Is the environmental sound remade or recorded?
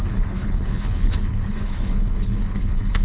remade